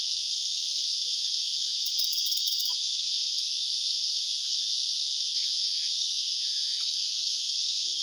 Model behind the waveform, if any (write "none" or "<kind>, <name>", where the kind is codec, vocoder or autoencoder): codec, SNAC